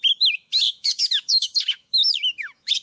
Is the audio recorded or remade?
remade